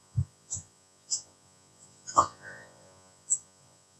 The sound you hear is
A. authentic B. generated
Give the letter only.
B